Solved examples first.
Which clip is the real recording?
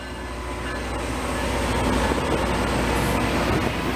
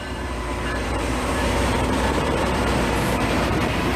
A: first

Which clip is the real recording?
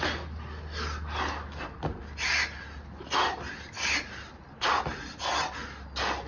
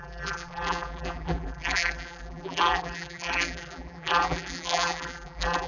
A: first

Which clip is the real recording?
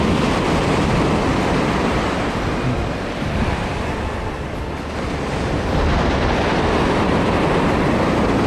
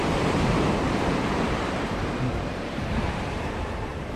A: first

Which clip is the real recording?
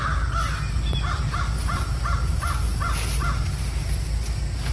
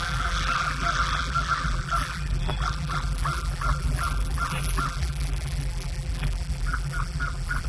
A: first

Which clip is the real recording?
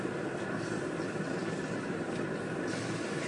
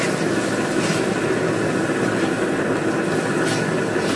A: second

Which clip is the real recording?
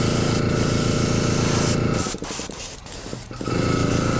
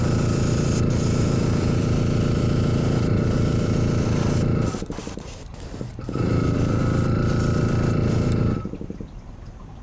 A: first